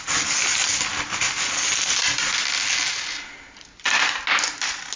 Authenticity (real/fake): real